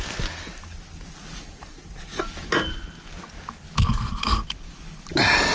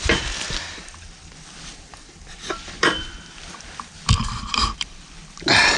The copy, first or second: second